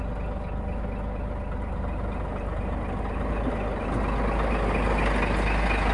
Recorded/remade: recorded